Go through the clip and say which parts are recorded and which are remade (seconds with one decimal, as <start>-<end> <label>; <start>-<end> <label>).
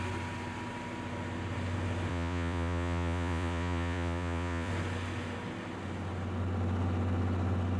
0.0-2.1 recorded; 2.1-4.7 remade; 4.7-7.8 recorded